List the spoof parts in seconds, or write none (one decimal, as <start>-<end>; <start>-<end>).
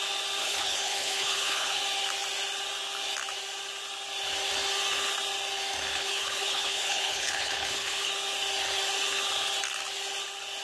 0.4-1.8; 5.9-8.1